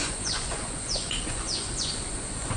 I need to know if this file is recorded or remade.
remade